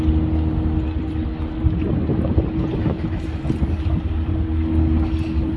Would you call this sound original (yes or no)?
yes